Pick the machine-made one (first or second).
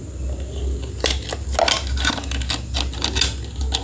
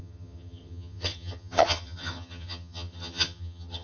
second